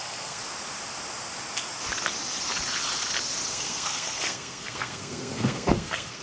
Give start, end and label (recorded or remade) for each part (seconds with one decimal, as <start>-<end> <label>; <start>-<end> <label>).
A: 0.0-0.4 remade; 0.4-3.5 recorded; 3.5-6.2 remade